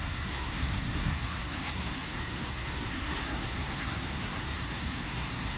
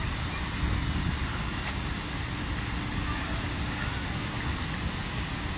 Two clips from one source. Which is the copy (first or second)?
first